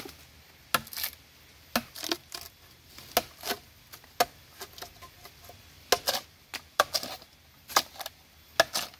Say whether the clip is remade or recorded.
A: recorded